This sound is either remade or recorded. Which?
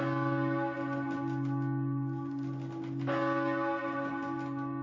recorded